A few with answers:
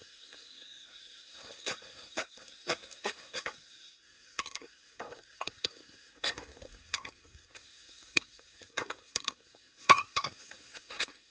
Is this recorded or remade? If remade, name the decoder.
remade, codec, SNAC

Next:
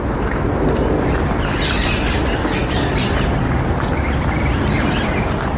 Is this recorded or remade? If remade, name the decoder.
recorded